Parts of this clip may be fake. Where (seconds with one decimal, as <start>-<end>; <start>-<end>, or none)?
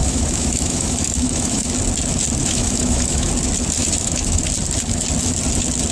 0.0-1.7; 2.4-3.3; 3.8-4.4